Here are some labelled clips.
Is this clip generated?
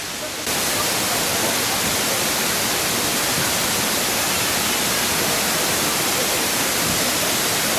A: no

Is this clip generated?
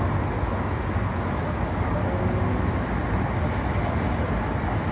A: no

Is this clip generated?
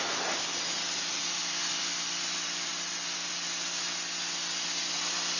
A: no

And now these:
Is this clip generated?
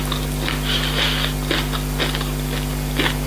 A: no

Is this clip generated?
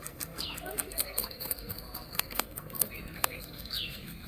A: yes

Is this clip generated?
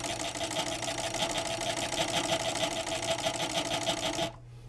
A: no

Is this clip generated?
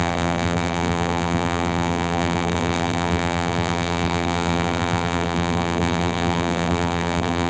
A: yes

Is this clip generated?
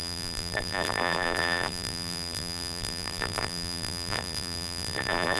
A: yes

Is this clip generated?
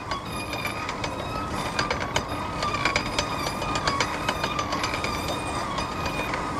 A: no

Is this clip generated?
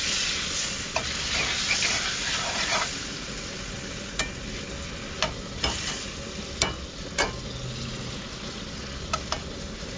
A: no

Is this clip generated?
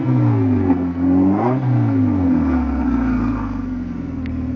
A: yes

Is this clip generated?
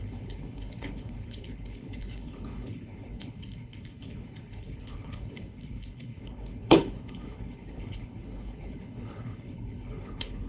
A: yes